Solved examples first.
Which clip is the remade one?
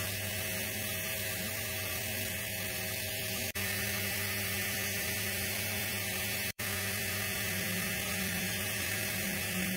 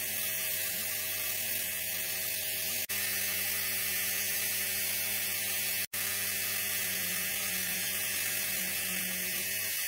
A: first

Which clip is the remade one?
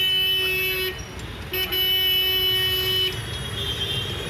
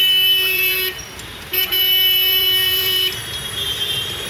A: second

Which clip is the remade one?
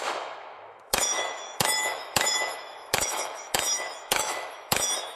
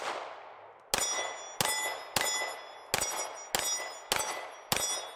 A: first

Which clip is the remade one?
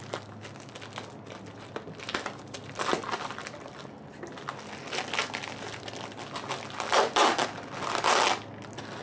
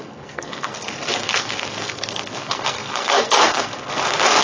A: second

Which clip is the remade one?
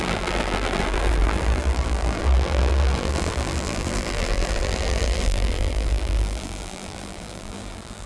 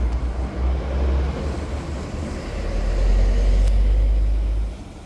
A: first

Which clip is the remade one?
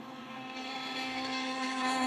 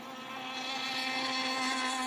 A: first